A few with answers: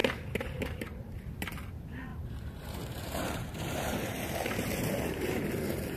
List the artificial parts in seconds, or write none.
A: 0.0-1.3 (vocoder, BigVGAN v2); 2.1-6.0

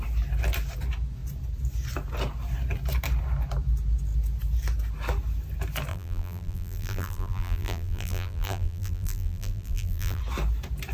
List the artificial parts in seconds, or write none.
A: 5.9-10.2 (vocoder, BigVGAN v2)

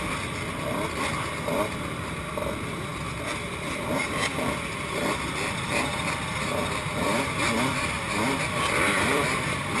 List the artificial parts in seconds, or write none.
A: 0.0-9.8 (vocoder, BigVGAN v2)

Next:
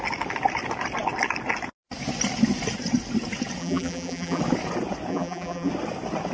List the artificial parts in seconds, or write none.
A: 3.6-4.4 (vocoder, BigVGAN v2); 5.1-5.7

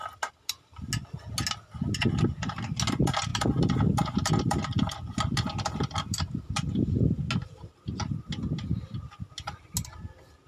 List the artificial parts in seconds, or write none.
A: 3.3-4.3 (vocoder, BigVGAN v2); 5.5-7.2